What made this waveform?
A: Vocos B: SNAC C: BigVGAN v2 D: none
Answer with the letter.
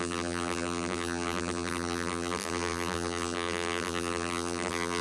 C